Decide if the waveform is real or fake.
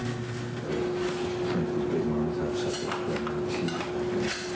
real